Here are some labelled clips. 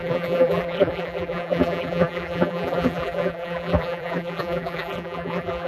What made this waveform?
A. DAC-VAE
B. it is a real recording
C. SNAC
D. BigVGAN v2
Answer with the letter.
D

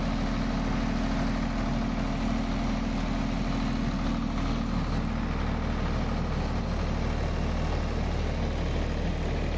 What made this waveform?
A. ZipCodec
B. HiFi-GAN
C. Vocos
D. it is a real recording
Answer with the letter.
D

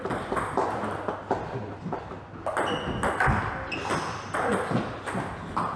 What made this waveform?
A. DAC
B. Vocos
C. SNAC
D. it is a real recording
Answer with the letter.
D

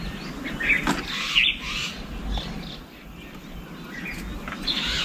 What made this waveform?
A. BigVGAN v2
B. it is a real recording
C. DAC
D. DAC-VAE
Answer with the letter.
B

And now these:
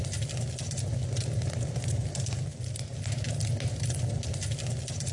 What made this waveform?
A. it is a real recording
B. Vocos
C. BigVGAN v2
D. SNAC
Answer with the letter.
A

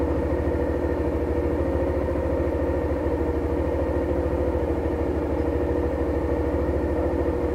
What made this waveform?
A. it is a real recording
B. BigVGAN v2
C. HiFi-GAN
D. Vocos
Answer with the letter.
A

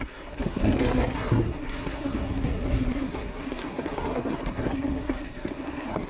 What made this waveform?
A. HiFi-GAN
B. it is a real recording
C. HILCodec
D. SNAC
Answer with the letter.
D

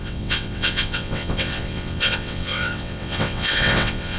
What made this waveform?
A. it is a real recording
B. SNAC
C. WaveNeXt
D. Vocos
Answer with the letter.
C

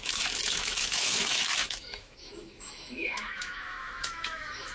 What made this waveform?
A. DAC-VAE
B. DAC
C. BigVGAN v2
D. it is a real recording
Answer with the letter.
A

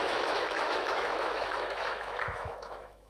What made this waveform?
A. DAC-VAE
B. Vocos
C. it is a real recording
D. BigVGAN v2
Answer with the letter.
A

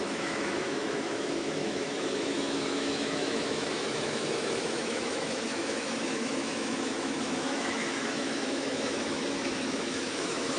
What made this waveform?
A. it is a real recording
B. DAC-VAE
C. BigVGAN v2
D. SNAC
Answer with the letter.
B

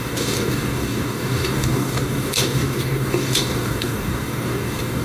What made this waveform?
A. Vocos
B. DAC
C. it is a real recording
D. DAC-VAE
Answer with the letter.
B